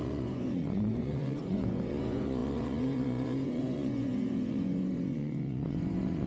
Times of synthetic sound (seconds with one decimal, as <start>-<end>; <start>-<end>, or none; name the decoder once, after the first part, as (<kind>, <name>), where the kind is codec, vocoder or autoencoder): 0.0-6.3 (vocoder, Vocos)